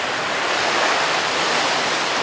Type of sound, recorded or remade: recorded